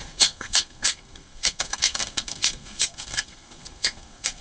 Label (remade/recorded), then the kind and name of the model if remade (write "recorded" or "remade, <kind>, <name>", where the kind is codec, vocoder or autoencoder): remade, codec, SNAC